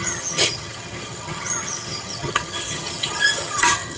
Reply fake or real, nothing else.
fake